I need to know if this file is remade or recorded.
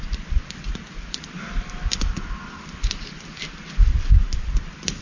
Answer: recorded